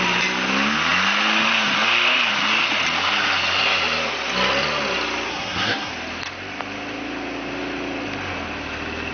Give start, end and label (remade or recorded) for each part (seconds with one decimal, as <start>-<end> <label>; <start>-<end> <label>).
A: 0.0-5.3 recorded; 5.3-5.9 remade; 5.9-9.1 recorded